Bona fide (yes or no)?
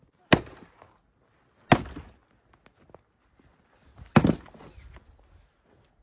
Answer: yes